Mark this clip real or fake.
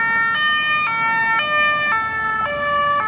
real